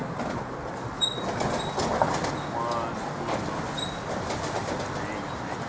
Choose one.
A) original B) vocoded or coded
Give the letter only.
A